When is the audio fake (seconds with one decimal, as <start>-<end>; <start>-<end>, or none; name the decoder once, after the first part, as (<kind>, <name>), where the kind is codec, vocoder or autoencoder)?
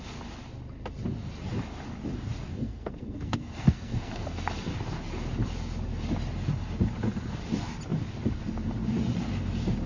2.5-4.5 (codec, SNAC)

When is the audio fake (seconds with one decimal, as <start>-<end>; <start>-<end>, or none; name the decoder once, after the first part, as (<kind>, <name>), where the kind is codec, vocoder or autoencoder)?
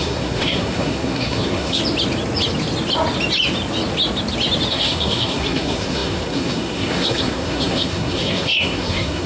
0.0-1.8 (codec, SNAC); 4.7-9.3